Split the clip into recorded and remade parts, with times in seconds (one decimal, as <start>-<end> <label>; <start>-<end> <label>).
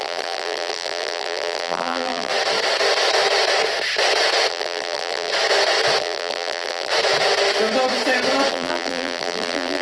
0.0-2.3 remade; 2.3-4.5 recorded; 4.5-5.3 remade; 5.3-6.0 recorded; 6.0-6.9 remade; 6.9-8.5 recorded; 8.5-9.8 remade